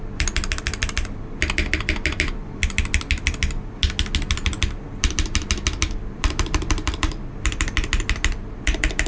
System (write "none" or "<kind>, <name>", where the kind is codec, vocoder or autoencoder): none